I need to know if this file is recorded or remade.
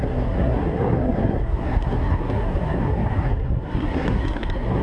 remade